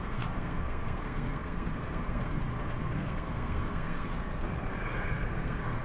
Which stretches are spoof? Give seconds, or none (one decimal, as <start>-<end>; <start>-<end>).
0.0-5.8